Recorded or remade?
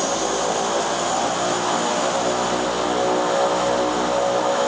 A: recorded